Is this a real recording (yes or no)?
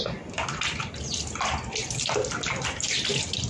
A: yes